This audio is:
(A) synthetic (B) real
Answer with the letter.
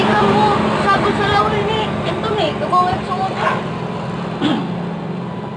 B